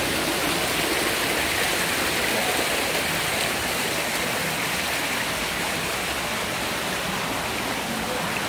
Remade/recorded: recorded